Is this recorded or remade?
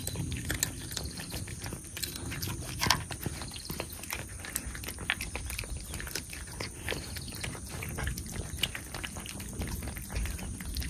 recorded